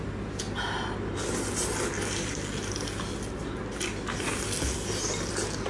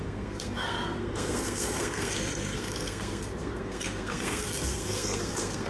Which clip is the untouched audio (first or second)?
first